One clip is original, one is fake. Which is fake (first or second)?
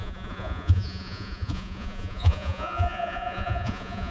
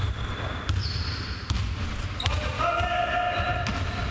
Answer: first